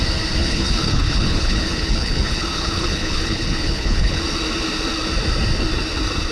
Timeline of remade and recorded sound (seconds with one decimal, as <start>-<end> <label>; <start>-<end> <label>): 0.0-0.4 recorded; 0.4-4.2 remade; 4.2-6.3 recorded